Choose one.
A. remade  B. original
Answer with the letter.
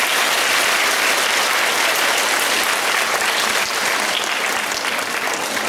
B